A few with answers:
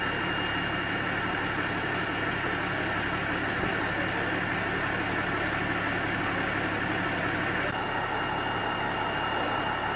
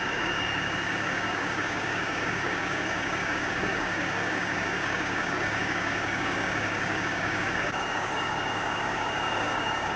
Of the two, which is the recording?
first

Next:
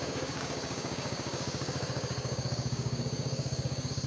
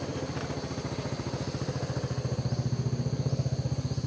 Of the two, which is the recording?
second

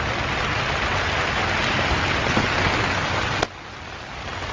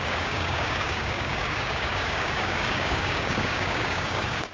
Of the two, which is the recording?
first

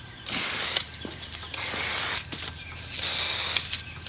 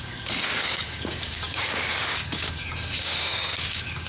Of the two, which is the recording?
first